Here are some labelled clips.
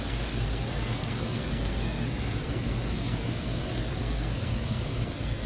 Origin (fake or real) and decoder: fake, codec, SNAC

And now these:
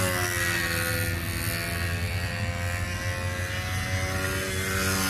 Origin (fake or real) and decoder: real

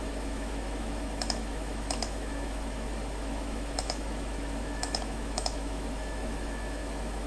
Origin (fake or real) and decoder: fake, autoencoder, DAC-VAE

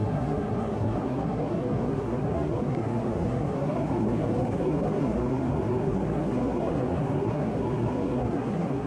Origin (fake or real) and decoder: fake, codec, SNAC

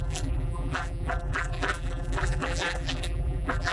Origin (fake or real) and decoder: fake, vocoder, BigVGAN v2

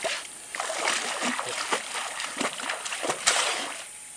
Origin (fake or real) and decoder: real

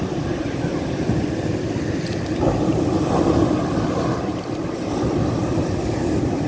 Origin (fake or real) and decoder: real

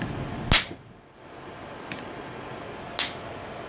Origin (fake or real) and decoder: real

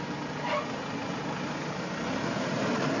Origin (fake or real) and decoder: real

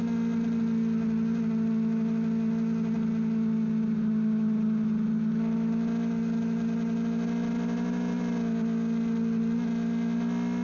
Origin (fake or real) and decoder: real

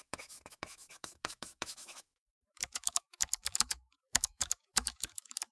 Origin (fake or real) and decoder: fake, autoencoder, DAC-VAE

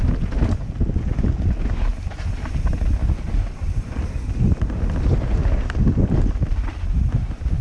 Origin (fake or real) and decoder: real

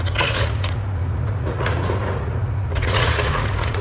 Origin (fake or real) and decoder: fake, vocoder, Vocos